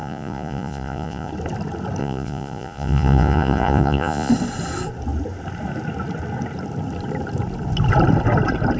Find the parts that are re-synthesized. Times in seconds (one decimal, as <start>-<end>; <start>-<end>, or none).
0.0-1.3; 2.0-4.3